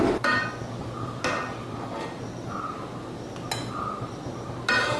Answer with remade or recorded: recorded